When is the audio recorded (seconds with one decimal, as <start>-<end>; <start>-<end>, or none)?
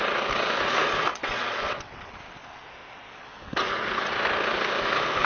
0.0-1.1; 2.2-5.2